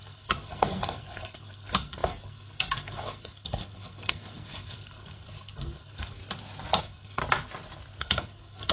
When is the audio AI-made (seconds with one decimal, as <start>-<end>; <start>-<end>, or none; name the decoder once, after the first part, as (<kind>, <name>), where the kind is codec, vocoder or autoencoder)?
0.0-6.2 (codec, SNAC); 6.8-7.2; 8.0-8.7